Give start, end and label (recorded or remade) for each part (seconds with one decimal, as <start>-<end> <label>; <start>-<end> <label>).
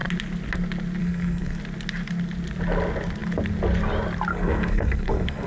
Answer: 0.0-1.0 recorded; 1.0-1.6 remade; 1.6-4.3 recorded; 4.3-5.5 remade